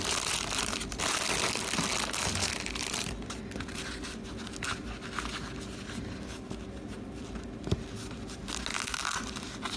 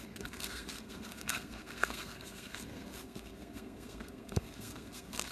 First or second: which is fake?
second